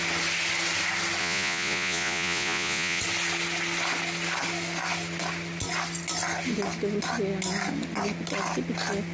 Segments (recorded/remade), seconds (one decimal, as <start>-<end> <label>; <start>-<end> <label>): 0.0-1.2 recorded; 1.2-3.0 remade; 3.0-9.1 recorded